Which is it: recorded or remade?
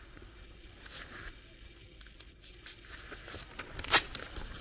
recorded